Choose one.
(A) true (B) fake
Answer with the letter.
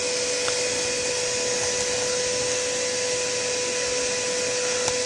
A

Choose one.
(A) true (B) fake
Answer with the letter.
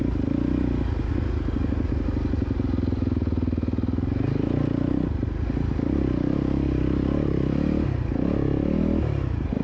A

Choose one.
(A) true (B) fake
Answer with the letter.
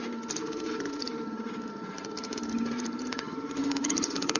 B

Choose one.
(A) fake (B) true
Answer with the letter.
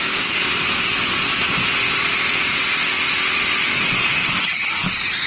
B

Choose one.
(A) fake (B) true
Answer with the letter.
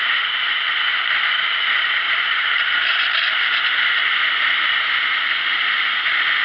B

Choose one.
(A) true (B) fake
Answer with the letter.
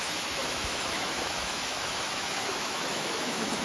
B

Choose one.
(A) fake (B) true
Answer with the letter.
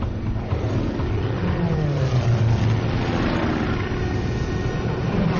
B